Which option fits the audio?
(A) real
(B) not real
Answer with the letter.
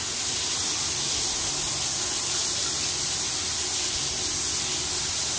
A